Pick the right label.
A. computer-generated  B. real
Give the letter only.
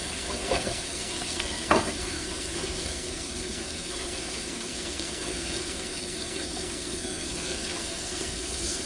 A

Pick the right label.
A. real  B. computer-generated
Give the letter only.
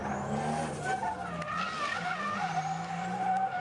A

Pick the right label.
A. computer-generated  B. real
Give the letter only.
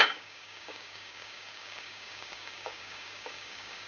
A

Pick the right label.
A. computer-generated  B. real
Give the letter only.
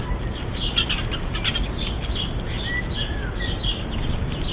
B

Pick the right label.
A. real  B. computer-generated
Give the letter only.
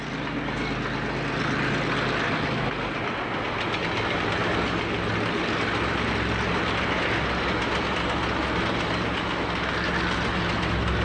A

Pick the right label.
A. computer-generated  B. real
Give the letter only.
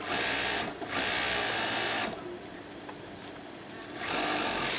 B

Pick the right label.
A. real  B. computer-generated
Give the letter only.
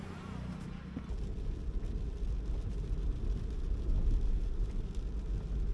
A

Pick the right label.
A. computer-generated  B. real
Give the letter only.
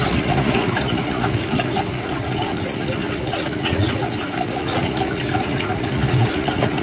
A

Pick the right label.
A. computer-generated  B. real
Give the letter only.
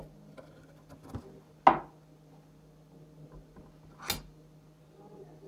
B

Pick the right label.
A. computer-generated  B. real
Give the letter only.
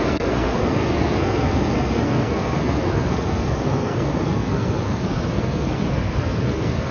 A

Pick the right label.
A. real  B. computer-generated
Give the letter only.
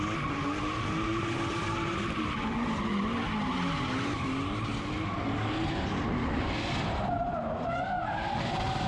A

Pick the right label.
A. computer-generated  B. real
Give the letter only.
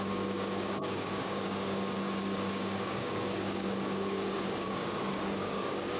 A